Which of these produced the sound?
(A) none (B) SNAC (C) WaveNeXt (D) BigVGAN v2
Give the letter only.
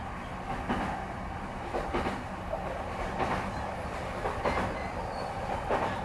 A